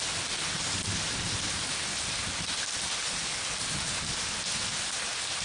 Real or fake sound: real